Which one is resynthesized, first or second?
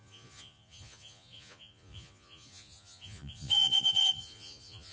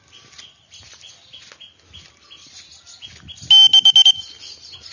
first